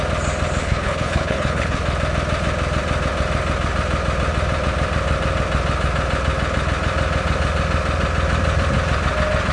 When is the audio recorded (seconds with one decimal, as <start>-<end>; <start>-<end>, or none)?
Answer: 0.0-0.6; 1.8-9.5